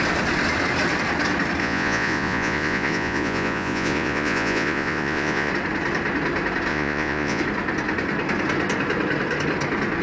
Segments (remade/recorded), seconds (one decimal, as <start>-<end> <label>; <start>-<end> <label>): 0.0-1.6 recorded; 1.6-5.5 remade; 5.5-6.7 recorded; 6.7-7.4 remade; 7.4-10.0 recorded